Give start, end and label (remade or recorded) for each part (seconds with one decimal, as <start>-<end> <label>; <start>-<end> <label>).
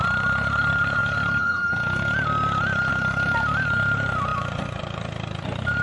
0.0-1.0 remade; 1.0-2.9 recorded; 2.9-5.8 remade